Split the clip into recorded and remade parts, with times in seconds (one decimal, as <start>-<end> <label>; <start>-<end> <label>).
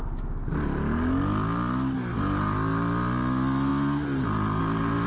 0.0-5.1 recorded